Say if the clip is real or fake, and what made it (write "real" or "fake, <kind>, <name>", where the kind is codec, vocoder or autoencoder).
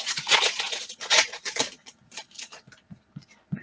fake, vocoder, Vocos